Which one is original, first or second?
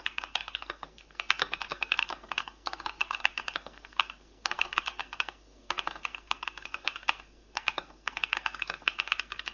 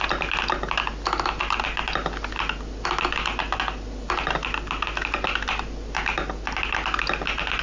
second